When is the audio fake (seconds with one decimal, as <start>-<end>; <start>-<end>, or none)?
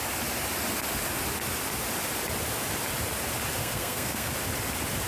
3.6-4.3